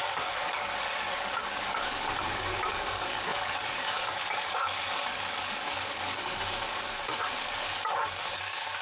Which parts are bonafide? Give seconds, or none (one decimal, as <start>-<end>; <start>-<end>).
none